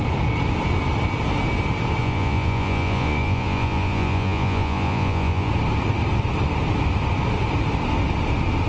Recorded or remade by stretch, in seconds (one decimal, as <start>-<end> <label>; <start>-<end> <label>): 0.0-2.0 recorded; 2.0-5.5 remade; 5.5-8.7 recorded